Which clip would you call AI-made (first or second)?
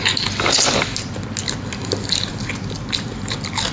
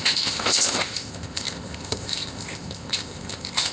second